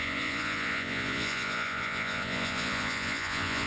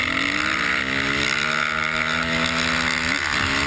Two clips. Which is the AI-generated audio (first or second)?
first